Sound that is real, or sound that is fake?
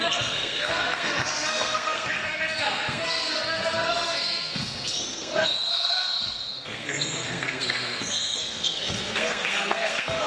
fake